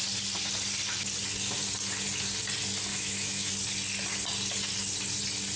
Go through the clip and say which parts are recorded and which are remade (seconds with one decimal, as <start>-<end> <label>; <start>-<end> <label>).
0.0-2.9 recorded; 2.9-3.5 remade; 3.5-5.6 recorded